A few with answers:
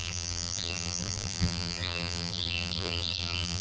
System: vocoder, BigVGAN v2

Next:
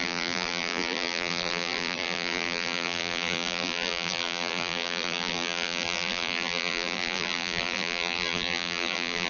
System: vocoder, BigVGAN v2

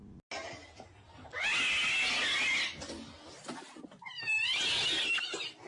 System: none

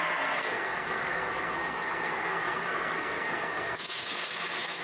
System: codec, SNAC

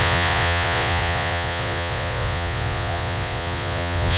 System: vocoder, Vocos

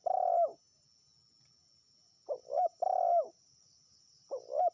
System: none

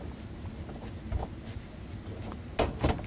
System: none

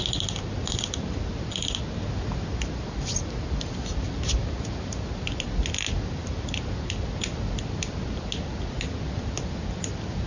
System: none